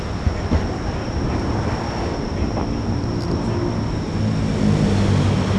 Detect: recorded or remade recorded